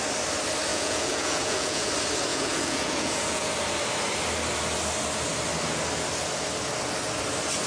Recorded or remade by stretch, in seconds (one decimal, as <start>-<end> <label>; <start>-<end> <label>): 0.0-0.7 recorded; 0.7-1.9 remade; 1.9-2.3 recorded; 2.3-3.5 remade; 3.5-7.7 recorded